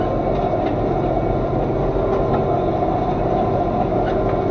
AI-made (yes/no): no